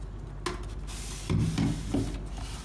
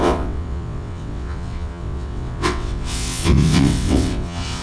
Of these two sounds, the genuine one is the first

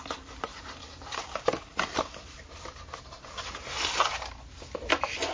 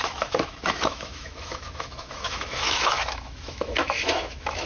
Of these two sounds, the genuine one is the first